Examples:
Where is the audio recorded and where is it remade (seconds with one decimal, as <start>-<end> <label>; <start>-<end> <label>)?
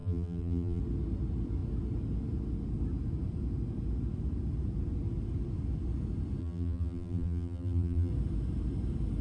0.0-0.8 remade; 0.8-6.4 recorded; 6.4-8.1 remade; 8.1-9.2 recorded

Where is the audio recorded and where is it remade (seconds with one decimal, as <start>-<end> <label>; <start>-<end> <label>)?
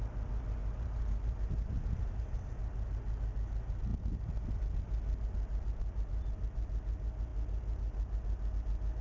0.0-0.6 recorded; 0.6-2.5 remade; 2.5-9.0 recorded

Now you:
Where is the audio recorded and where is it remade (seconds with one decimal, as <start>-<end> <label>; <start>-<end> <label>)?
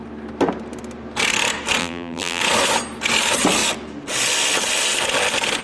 0.0-1.8 recorded; 1.8-2.4 remade; 2.4-5.6 recorded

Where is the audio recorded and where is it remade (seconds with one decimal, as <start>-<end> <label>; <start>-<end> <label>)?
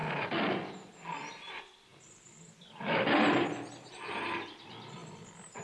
0.0-0.5 recorded; 0.5-5.6 remade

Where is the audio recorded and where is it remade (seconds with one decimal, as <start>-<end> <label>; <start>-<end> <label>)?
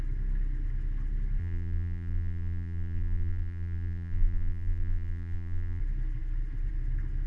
0.0-1.4 recorded; 1.4-5.8 remade; 5.8-7.3 recorded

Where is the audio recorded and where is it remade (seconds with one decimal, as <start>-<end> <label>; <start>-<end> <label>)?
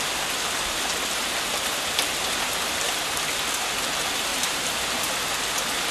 0.0-1.2 recorded; 1.2-1.8 remade; 1.8-4.3 recorded; 4.3-4.8 remade; 4.8-5.9 recorded